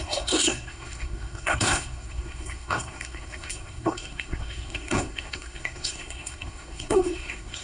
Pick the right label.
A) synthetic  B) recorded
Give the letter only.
A